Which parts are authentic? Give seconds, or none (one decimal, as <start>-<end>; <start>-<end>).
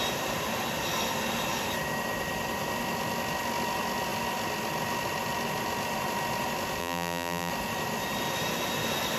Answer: 0.0-6.8; 7.5-9.2